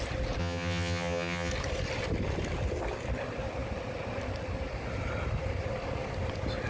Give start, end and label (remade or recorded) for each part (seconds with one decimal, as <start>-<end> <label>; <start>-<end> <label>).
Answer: 0.0-0.4 recorded; 0.4-1.5 remade; 1.5-6.7 recorded